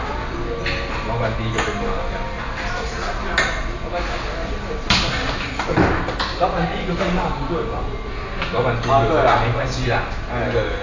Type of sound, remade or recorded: recorded